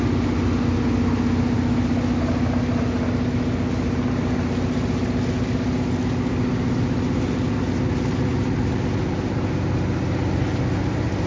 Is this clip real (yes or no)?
yes